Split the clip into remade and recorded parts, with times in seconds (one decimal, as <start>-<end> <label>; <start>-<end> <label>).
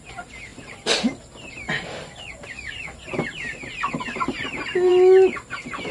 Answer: 0.0-5.9 recorded